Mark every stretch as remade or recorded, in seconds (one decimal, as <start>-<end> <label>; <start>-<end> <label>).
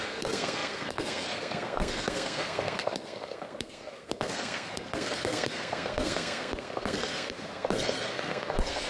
0.0-8.9 remade